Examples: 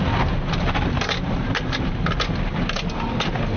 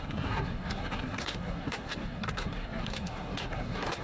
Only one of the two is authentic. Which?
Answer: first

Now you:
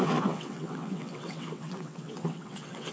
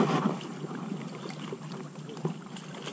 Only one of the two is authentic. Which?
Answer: second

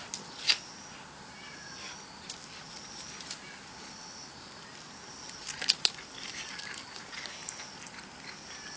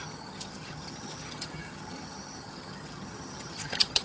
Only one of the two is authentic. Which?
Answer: first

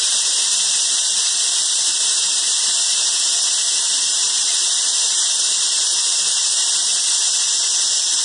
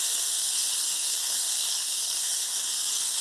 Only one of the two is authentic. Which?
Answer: first